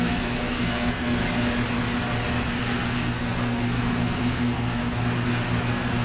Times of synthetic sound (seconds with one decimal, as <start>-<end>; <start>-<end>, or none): 0.0-1.2; 2.6-4.8; 5.6-6.0